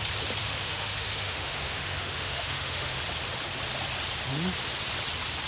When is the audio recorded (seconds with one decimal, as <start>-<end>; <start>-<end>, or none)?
0.0-0.4; 3.0-5.5